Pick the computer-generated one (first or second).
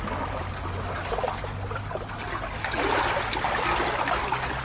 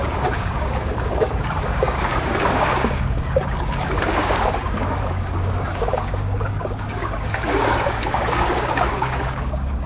second